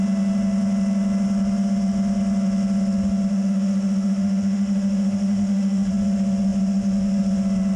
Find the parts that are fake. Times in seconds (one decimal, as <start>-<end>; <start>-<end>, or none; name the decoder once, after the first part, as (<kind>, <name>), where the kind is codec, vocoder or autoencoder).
3.3-5.9 (autoencoder, DAC-VAE)